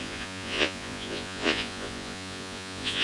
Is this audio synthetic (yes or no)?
yes